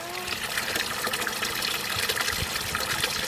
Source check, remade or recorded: recorded